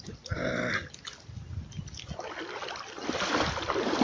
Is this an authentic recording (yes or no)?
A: yes